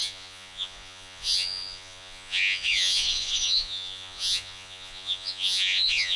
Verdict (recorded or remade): remade